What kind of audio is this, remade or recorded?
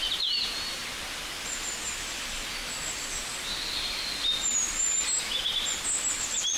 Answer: recorded